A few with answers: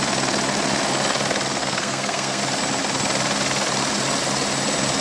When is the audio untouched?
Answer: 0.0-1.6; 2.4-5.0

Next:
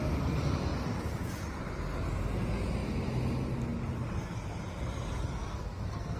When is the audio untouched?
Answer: 0.0-5.4

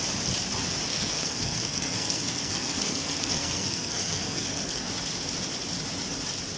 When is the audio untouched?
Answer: 0.0-0.9; 4.9-6.6

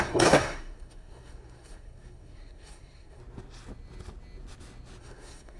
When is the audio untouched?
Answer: 3.2-5.0